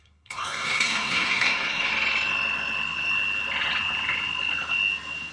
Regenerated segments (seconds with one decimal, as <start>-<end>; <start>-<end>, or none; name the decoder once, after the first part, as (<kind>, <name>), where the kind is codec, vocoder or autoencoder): 0.0-1.9 (codec, SNAC)